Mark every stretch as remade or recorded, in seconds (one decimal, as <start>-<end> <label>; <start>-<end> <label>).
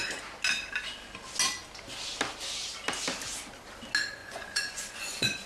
0.0-4.2 recorded; 4.2-5.5 remade